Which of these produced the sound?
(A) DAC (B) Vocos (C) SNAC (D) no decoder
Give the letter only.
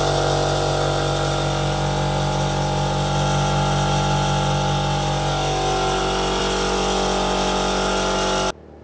D